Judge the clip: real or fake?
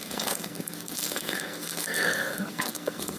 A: fake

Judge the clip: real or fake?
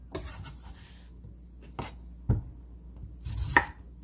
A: real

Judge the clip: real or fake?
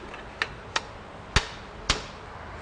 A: real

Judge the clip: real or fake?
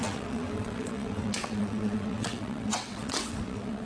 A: fake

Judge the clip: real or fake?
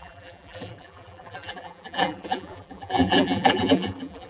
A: fake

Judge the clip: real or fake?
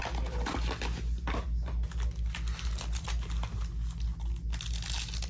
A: real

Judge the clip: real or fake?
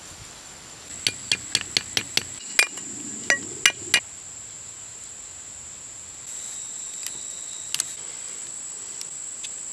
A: real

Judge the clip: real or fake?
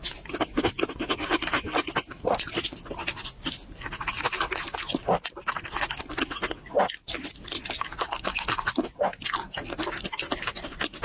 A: real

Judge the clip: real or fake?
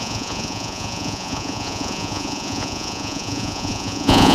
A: fake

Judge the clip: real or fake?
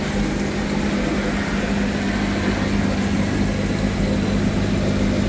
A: real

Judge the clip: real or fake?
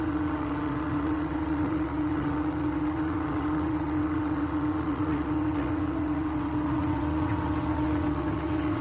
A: fake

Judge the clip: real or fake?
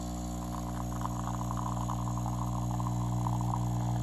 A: real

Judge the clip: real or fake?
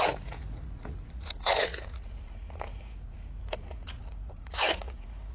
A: fake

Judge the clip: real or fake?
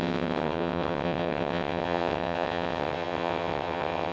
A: fake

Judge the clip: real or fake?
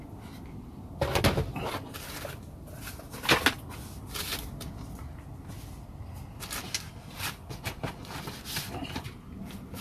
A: real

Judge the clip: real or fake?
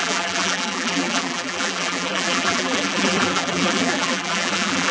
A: fake